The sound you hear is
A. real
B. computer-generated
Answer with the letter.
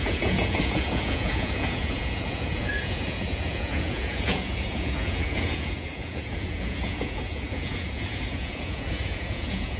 B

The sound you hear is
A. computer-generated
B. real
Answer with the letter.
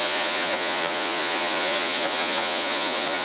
A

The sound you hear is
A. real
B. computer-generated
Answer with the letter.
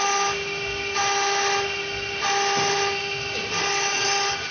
A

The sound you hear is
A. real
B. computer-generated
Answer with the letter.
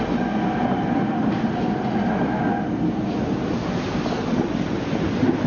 A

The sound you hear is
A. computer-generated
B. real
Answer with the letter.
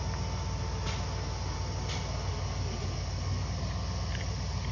B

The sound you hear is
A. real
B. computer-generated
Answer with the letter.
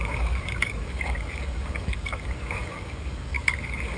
B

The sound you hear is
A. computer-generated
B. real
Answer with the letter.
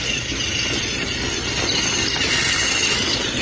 B